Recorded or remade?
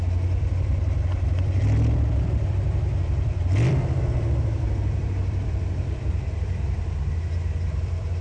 remade